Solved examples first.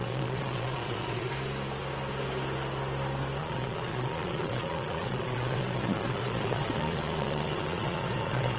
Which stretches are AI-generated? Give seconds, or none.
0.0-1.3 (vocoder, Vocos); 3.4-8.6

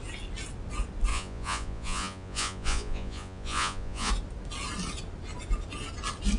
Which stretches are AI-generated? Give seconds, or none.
1.1-4.1 (vocoder, Vocos)

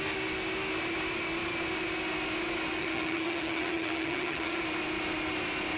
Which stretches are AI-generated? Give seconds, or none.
2.8-4.6 (vocoder, HiFi-GAN)